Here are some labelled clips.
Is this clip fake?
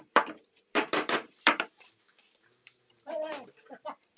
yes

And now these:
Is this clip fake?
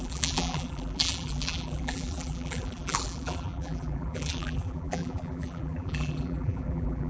yes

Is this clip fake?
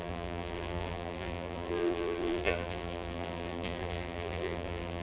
yes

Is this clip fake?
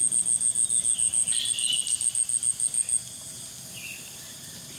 no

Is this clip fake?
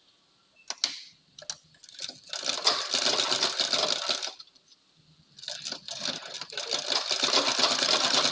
no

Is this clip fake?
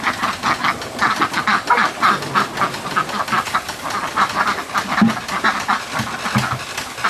no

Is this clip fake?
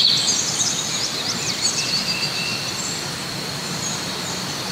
no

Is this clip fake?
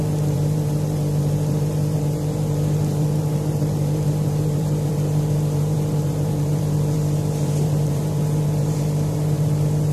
yes